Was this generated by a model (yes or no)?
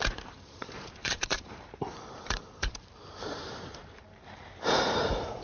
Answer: yes